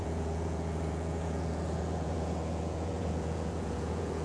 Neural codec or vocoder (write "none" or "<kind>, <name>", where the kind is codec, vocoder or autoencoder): vocoder, Vocos